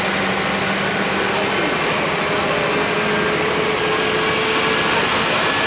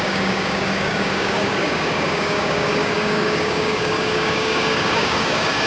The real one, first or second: first